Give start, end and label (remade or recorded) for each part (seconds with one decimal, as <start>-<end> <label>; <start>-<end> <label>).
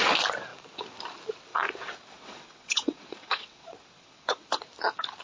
0.0-1.5 recorded; 1.5-4.6 remade; 4.6-5.2 recorded